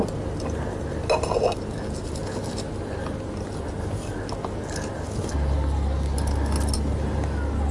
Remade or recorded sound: recorded